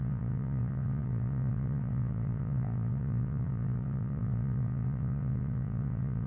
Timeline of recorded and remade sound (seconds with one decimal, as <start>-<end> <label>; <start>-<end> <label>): 0.0-6.3 remade

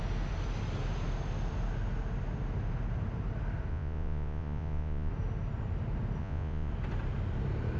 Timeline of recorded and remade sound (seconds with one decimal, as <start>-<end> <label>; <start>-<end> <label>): 0.0-3.7 recorded; 3.7-5.1 remade; 5.1-6.2 recorded; 6.2-6.7 remade; 6.7-7.8 recorded